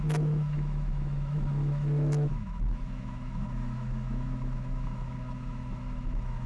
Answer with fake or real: fake